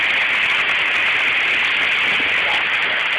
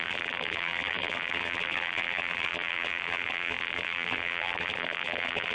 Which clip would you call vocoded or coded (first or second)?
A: second